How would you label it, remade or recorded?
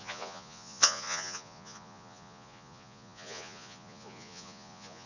remade